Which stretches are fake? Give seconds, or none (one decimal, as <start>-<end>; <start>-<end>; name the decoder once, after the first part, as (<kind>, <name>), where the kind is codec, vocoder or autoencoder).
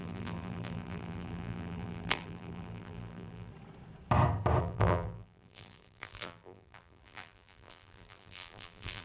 0.0-3.5 (vocoder, BigVGAN v2); 4.6-9.0